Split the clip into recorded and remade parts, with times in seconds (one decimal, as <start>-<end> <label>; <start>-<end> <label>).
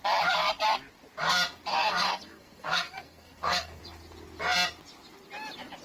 0.0-1.7 recorded; 1.7-3.8 remade; 3.8-5.8 recorded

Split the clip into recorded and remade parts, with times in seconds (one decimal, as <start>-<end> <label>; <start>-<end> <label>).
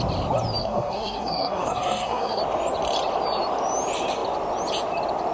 0.0-0.6 recorded; 0.6-2.4 remade; 2.4-5.3 recorded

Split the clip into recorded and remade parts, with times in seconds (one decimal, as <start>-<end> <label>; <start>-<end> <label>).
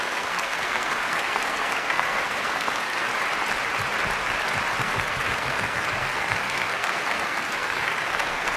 0.0-3.1 remade; 3.1-4.8 recorded; 4.8-8.6 remade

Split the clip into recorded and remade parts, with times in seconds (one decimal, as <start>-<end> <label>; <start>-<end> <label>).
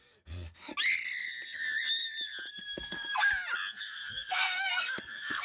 0.0-0.7 remade; 0.7-2.5 recorded; 2.5-3.3 remade; 3.3-3.8 recorded; 3.8-5.4 remade